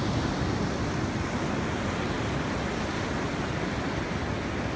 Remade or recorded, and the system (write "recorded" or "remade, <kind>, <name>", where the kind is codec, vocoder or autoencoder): recorded